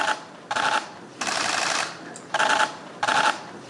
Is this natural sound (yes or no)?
no